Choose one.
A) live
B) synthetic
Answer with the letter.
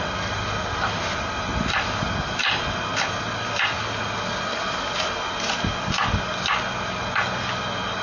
A